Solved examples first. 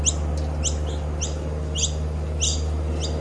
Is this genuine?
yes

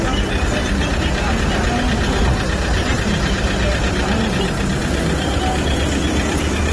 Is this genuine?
yes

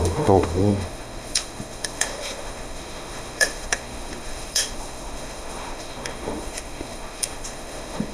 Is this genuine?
no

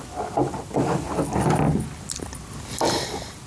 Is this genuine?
yes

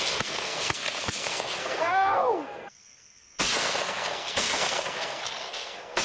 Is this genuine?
no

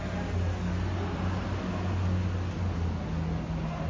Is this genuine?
yes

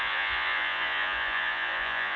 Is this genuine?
no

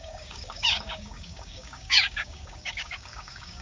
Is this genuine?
no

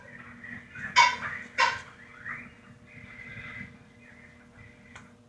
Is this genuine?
yes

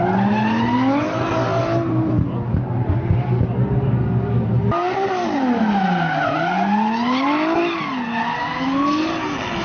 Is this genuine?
yes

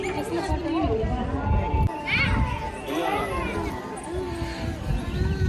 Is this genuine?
yes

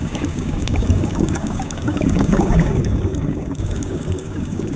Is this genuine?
no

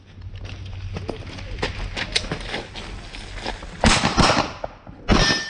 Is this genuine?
yes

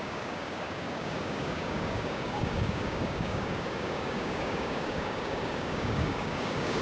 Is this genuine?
no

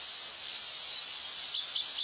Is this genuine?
yes